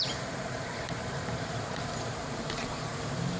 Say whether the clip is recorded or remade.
remade